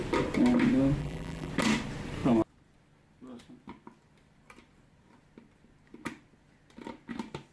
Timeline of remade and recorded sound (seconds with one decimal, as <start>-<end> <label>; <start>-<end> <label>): 0.0-1.0 recorded; 1.0-1.5 remade; 1.5-7.5 recorded